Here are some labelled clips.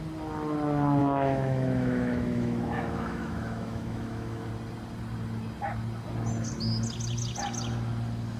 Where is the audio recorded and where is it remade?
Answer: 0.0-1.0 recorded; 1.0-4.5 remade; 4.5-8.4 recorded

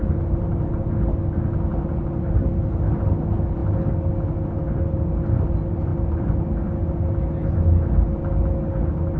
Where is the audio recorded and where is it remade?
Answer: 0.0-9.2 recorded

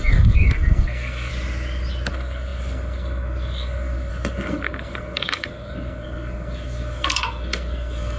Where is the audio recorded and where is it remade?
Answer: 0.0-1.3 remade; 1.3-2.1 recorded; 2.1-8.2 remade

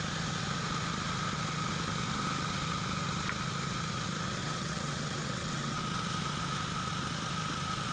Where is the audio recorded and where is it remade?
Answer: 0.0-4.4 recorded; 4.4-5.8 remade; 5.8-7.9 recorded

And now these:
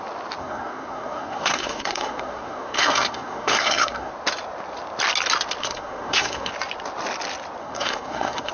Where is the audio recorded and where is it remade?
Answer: 0.0-0.4 recorded; 0.4-4.1 remade; 4.1-5.6 recorded; 5.6-6.5 remade; 6.5-7.6 recorded; 7.6-8.5 remade